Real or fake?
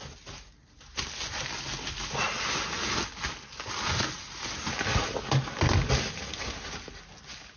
real